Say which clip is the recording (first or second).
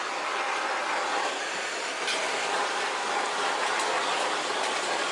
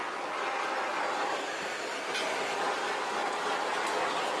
second